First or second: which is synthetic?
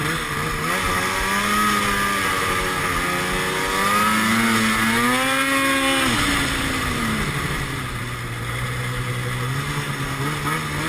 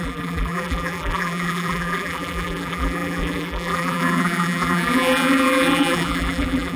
second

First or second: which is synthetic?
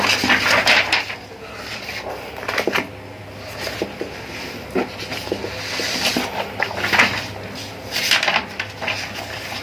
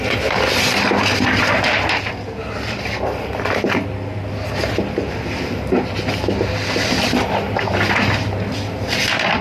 second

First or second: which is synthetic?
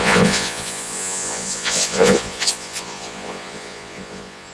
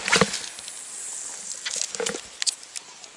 first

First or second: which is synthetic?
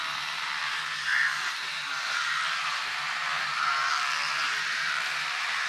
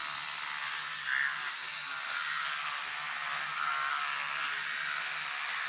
first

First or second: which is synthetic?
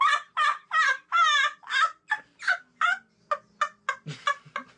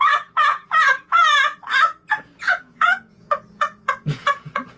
second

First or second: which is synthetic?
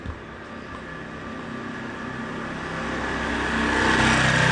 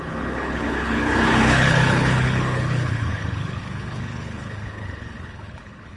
second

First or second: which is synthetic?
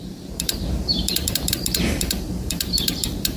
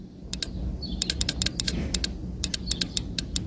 first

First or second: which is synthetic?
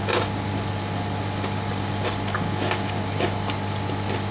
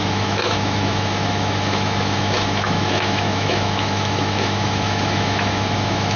second